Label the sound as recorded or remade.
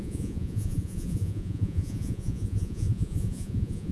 remade